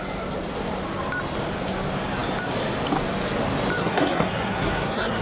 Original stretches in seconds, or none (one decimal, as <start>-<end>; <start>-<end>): 0.0-3.8